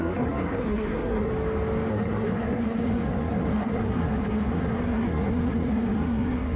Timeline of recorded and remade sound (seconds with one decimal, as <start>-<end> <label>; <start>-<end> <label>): 0.0-1.3 remade; 1.3-1.9 recorded; 1.9-6.6 remade

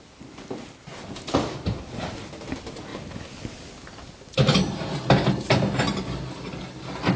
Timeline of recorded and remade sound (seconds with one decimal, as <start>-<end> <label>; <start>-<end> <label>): 0.0-7.2 recorded

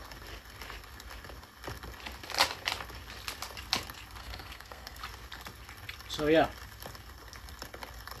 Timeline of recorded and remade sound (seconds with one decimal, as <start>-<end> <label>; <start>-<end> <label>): 0.0-4.2 recorded; 4.2-5.0 remade; 5.0-8.2 recorded

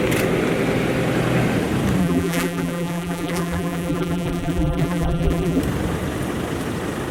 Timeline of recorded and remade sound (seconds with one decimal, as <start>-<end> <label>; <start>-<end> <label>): 0.0-2.0 recorded; 2.0-5.6 remade; 5.6-7.1 recorded

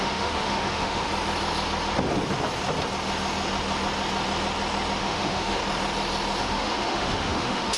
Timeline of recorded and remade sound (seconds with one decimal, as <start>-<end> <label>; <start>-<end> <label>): 0.0-1.1 remade; 1.1-5.0 recorded; 5.0-5.6 remade; 5.6-6.4 recorded; 6.4-7.8 remade